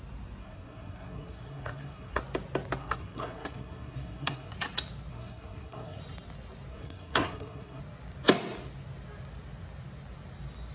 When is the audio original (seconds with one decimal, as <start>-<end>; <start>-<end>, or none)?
0.0-0.4; 2.2-2.8; 4.5-5.1; 6.0-6.7; 7.8-10.7